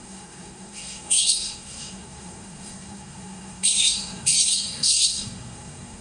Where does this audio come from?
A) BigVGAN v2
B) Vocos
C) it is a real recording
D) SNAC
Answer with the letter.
D